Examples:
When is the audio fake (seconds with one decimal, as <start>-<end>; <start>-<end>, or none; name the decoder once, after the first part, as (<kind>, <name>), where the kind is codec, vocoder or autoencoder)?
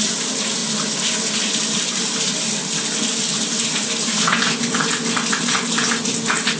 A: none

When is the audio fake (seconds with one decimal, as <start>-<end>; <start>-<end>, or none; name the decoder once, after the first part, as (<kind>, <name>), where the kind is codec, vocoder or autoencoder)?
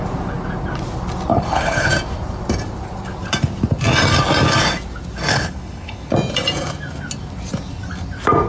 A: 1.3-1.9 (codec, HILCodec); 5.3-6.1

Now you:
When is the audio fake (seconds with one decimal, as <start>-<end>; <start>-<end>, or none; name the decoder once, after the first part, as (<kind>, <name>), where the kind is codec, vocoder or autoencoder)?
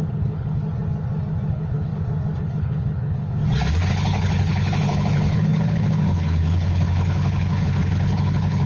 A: 0.0-0.6 (codec, HILCodec); 1.5-1.9; 2.4-3.4; 3.9-8.7